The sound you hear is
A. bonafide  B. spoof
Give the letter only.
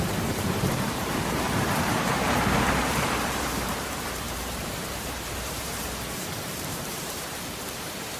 B